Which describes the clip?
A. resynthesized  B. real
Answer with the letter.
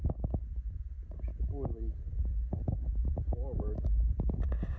A